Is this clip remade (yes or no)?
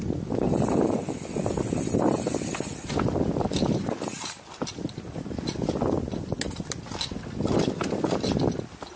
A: no